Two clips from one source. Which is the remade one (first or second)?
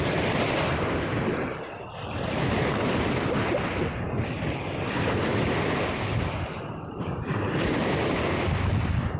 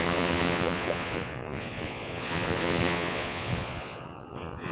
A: second